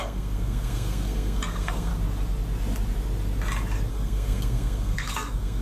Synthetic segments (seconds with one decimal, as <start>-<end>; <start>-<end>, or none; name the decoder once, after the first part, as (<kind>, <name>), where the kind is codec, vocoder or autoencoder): 0.0-1.9 (codec, SNAC); 3.9-5.6